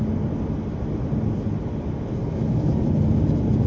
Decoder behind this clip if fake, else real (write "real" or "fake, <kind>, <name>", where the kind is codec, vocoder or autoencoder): real